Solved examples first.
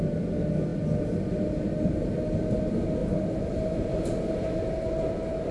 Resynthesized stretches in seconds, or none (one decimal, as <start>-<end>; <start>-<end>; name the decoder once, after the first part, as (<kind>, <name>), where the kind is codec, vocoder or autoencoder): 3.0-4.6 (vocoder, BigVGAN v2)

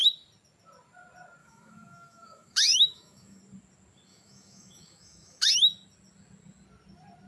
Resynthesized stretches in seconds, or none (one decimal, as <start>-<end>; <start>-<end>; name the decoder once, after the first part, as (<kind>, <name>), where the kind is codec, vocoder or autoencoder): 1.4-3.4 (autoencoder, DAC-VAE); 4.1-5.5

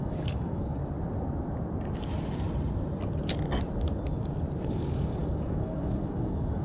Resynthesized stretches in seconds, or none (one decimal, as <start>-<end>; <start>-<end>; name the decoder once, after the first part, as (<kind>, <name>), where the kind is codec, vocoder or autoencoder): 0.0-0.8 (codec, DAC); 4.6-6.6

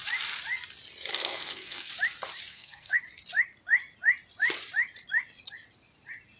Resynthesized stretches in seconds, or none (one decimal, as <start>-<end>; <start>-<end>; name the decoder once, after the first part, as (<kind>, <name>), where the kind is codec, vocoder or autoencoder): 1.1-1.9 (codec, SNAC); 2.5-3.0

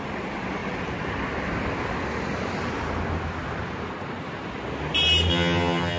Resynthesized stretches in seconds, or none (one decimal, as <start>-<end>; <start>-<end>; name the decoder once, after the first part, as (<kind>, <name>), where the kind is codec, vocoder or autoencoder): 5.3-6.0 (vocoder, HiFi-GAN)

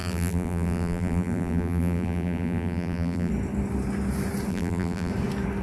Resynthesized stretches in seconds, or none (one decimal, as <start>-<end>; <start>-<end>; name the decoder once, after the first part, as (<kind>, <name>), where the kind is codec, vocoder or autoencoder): 0.0-3.3 (vocoder, BigVGAN v2); 4.5-5.1

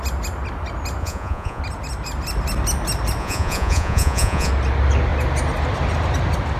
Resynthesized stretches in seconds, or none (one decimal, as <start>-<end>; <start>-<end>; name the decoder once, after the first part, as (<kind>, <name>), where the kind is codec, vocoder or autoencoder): 1.0-1.6 (vocoder, Vocos); 3.2-4.5

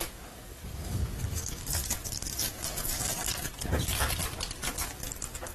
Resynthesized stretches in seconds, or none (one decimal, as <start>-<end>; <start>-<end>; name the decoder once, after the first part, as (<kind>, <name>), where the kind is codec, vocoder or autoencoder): 0.0-4.2 (codec, DAC); 4.7-5.5